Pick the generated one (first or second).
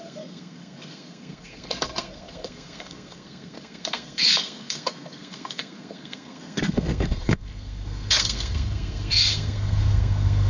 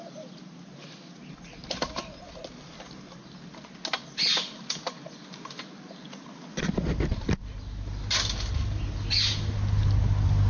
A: first